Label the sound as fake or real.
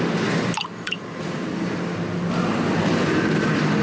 real